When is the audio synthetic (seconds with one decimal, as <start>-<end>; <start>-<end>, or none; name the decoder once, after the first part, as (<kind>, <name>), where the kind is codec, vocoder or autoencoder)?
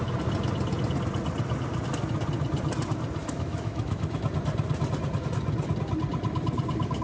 3.2-4.2 (autoencoder, DAC-VAE)